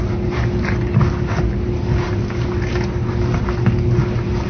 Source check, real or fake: real